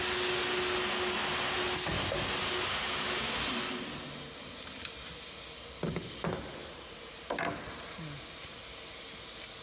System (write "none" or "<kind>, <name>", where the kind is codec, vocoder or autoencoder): none